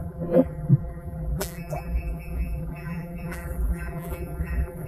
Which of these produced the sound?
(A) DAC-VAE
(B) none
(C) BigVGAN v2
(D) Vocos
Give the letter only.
C